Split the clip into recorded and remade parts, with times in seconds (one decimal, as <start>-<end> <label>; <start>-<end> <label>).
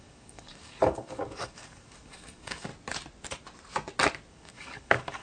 0.0-2.7 remade; 2.7-4.3 recorded; 4.3-5.2 remade